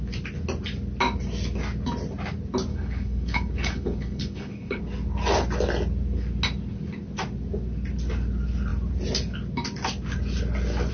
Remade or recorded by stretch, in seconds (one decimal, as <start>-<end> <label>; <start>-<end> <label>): 0.0-2.7 recorded; 2.7-4.8 remade; 4.8-10.9 recorded